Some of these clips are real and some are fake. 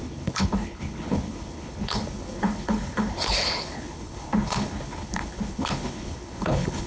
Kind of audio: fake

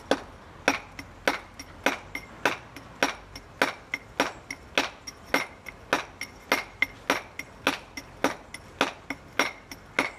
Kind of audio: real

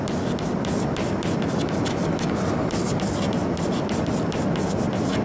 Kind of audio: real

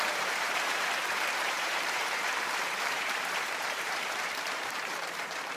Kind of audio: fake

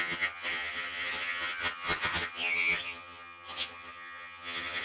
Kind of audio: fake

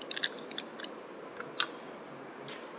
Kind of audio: real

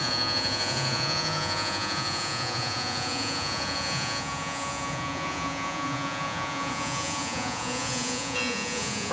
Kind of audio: fake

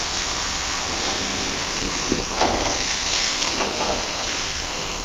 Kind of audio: fake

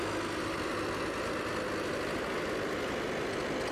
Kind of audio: real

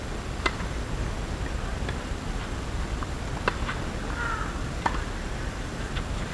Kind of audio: real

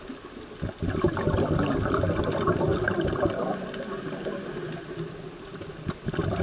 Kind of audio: real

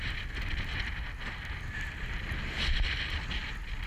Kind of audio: real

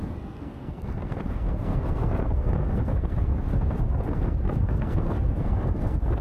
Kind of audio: fake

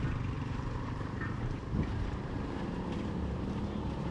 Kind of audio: fake